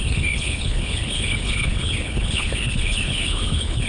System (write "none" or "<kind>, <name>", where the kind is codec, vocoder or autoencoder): codec, HILCodec